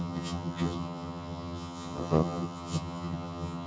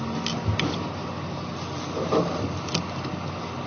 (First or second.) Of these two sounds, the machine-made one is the first